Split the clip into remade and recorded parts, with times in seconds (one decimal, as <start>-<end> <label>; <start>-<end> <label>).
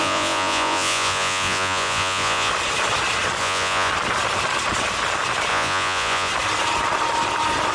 0.0-2.5 remade; 2.5-3.4 recorded; 3.4-3.9 remade; 3.9-5.5 recorded; 5.5-6.3 remade; 6.3-7.7 recorded